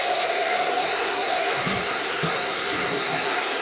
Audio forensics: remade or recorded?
remade